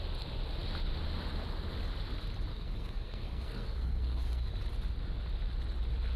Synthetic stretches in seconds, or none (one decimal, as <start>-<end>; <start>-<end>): 2.5-4.5